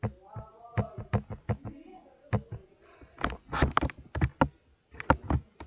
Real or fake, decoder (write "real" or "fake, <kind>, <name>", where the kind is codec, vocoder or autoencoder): real